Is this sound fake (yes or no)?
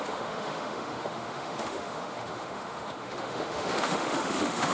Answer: yes